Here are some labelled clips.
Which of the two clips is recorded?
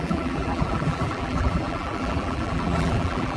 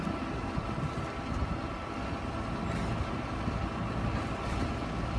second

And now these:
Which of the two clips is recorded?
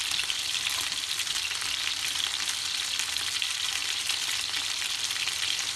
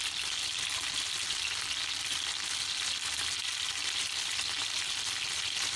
second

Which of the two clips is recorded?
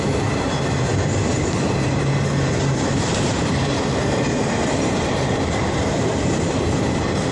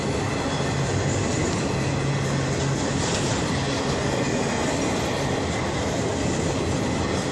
second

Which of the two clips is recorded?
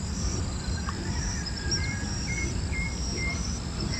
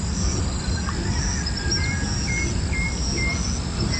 second